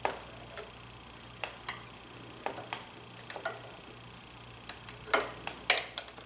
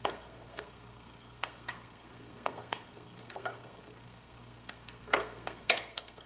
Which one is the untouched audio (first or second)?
first